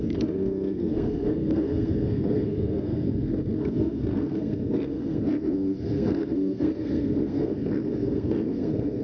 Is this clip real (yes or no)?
no